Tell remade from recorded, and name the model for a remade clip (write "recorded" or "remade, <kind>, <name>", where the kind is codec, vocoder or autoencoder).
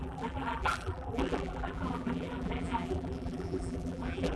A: remade, vocoder, BigVGAN v2